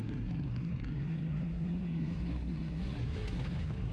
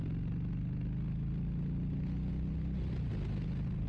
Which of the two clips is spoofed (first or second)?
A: first